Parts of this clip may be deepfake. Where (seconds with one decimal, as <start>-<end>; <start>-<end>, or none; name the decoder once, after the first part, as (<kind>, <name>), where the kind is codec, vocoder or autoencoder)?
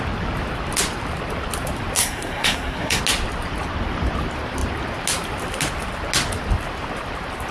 2.0-3.0 (codec, SNAC)